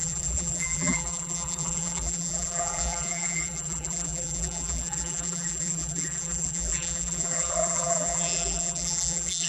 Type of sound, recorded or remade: remade